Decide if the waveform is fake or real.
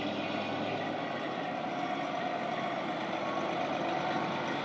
real